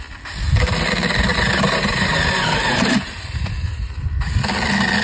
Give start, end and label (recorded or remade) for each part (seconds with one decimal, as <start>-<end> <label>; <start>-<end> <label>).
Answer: 0.0-1.3 recorded; 1.3-4.3 remade; 4.3-5.0 recorded